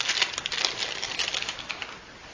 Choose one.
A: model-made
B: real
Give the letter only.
B